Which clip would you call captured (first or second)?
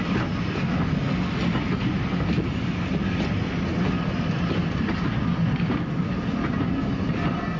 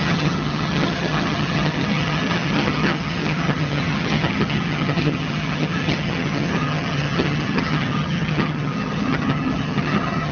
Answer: first